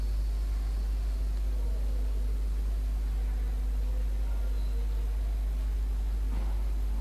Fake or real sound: real